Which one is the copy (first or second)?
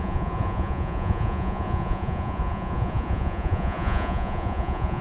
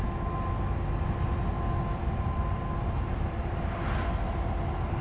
first